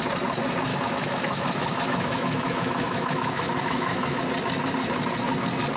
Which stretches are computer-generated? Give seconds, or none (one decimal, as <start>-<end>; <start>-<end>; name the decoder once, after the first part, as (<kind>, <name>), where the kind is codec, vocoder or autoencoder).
0.7-4.2 (autoencoder, DAC-VAE)